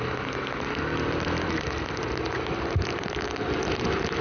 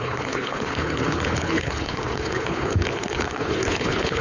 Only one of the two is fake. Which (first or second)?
second